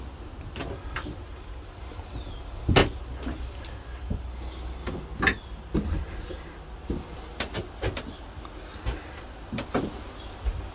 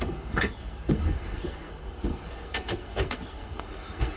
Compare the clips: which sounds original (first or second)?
first